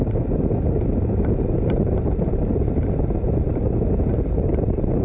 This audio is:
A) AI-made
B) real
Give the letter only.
A